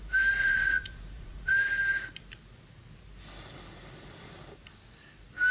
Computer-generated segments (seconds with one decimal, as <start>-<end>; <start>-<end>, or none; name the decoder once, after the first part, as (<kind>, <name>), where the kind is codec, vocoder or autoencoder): 0.4-1.5 (vocoder, Vocos)